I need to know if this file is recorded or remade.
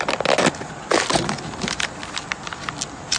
recorded